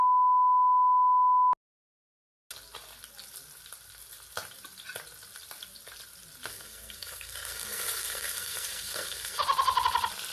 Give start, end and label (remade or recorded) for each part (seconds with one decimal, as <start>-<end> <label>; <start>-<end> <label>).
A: 0.0-6.5 recorded; 6.5-9.4 remade; 9.4-10.3 recorded